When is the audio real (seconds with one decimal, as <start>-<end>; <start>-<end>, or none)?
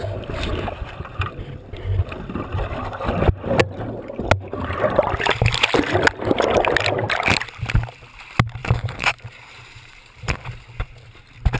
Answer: 0.0-0.5; 1.2-8.6; 10.3-11.6